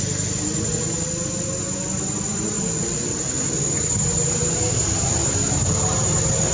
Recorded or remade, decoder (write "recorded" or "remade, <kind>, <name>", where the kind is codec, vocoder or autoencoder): recorded